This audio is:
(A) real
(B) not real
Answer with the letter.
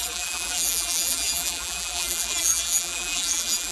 B